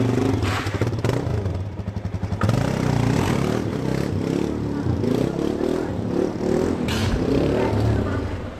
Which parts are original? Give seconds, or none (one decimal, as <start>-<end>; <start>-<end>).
0.0-8.6